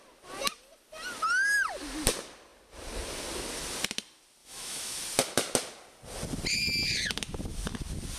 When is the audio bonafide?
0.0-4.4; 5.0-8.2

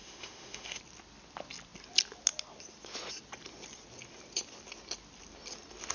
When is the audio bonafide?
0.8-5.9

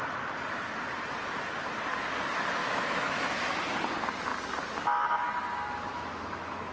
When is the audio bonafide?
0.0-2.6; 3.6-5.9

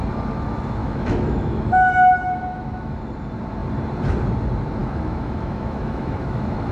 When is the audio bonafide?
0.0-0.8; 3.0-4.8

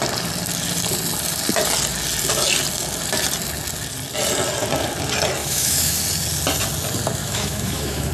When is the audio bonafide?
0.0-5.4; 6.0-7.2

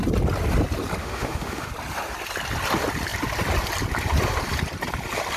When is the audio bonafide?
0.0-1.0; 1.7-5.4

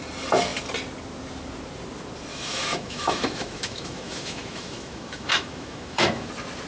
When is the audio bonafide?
0.0-2.3; 6.3-6.7

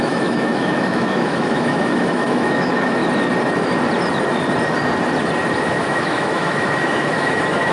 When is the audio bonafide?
3.0-5.6